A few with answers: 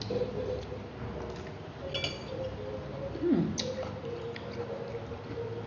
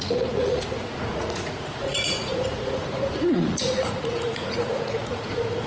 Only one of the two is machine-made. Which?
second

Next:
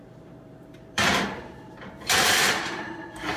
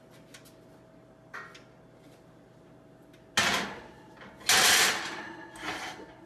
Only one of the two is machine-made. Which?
first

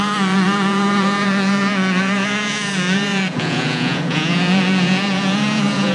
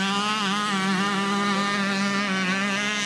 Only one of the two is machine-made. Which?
first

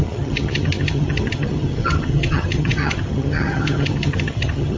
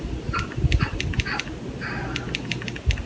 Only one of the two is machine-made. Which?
first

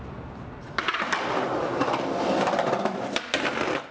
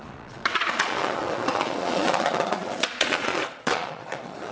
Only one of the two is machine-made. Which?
second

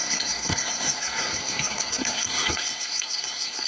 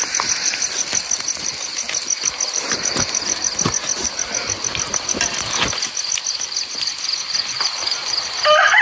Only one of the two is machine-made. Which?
first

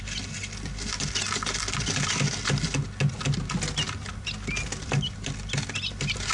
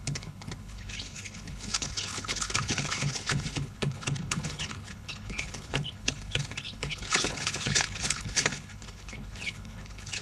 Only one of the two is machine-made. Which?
second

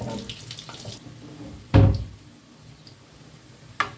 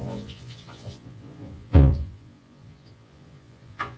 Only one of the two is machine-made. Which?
second